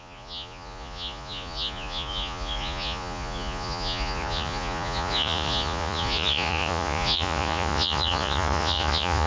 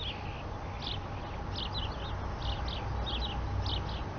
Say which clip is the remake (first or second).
first